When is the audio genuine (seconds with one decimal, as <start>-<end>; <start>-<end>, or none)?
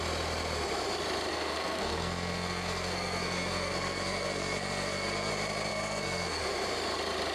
0.0-1.3; 5.3-5.7; 6.4-7.3